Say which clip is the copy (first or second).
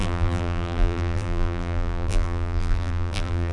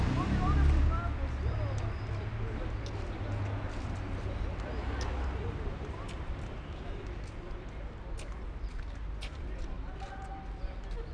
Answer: first